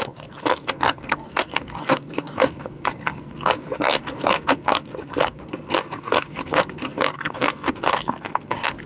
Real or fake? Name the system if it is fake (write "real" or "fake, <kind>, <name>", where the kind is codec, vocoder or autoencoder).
fake, codec, SNAC